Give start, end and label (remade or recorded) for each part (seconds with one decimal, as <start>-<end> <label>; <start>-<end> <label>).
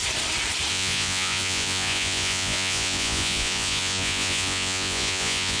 0.0-0.7 recorded; 0.7-5.6 remade